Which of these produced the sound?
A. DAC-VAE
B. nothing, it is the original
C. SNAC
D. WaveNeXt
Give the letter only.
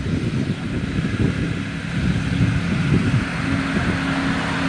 B